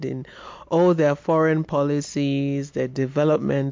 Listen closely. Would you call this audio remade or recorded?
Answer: recorded